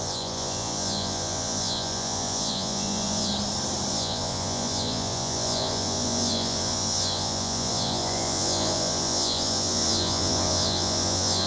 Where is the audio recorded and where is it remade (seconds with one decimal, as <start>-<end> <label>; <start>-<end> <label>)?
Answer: 0.0-3.3 remade; 3.3-3.9 recorded; 3.9-11.5 remade